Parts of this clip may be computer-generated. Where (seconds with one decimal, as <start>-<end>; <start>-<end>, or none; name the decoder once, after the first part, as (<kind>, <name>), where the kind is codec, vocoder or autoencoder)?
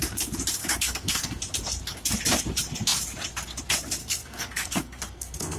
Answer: 0.6-1.4 (codec, SNAC); 4.0-5.6